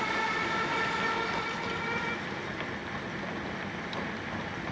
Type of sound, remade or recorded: recorded